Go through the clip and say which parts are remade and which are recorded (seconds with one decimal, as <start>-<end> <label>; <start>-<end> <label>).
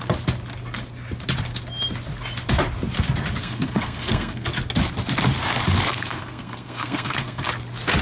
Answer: 0.0-3.4 recorded; 3.4-4.5 remade; 4.5-5.9 recorded; 5.9-7.5 remade; 7.5-8.0 recorded